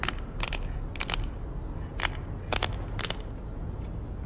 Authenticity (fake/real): real